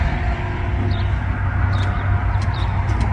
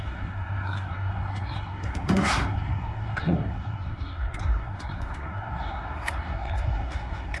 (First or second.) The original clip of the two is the first